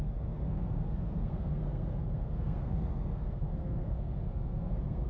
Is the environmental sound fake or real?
fake